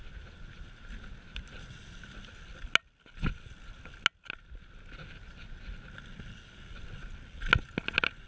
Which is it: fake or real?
real